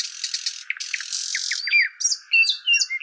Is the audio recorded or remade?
recorded